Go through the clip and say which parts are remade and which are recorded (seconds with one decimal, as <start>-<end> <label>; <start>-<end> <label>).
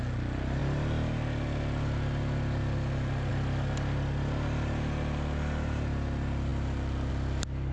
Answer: 0.0-7.7 recorded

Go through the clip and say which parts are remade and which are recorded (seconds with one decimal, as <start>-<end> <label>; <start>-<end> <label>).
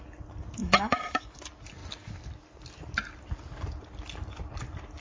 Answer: 0.0-0.6 recorded; 0.6-1.4 remade; 1.4-5.0 recorded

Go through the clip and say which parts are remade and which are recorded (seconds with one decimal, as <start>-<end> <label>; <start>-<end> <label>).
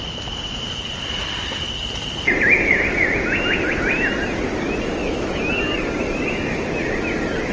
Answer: 0.0-5.0 recorded; 5.0-5.5 remade; 5.5-7.5 recorded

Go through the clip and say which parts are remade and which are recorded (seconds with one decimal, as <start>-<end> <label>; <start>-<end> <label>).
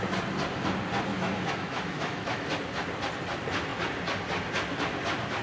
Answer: 0.0-1.1 recorded; 1.1-2.5 remade; 2.5-5.4 recorded